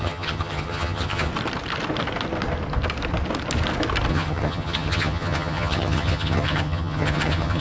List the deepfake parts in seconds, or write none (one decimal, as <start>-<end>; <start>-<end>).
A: 0.0-1.3; 4.1-7.6